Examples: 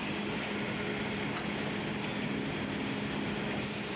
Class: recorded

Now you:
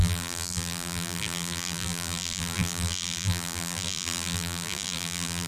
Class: remade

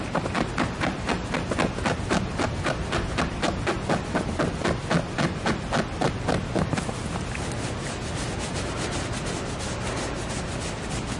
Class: recorded